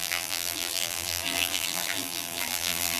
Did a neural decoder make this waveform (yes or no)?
yes